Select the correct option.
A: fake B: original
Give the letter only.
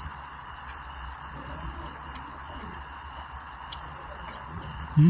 A